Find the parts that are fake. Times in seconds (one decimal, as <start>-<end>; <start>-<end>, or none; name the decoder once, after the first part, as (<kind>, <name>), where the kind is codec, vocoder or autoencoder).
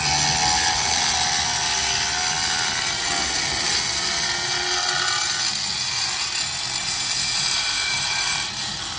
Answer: 6.8-9.0 (vocoder, BigVGAN v2)